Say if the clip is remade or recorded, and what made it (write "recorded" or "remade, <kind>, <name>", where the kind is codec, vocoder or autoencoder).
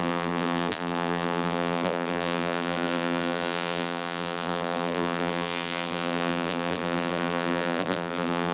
remade, vocoder, BigVGAN v2